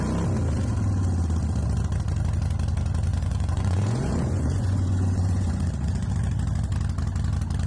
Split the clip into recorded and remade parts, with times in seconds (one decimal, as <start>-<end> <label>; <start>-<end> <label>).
0.0-3.1 recorded; 3.1-6.1 remade; 6.1-7.7 recorded